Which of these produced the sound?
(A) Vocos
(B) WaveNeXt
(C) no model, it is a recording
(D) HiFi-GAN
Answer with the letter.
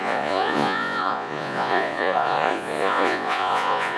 A